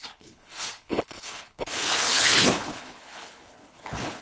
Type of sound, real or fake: fake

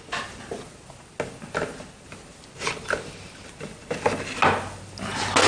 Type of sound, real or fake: real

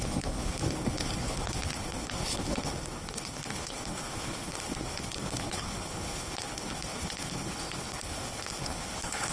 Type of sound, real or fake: fake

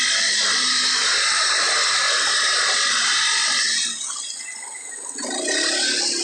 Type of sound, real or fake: real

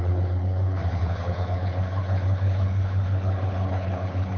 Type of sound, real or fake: fake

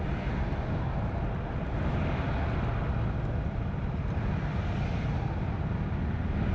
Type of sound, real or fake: real